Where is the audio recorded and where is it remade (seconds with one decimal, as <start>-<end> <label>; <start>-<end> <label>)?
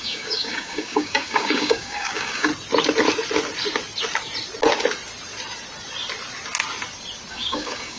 0.0-2.5 remade; 2.5-7.3 recorded; 7.3-8.0 remade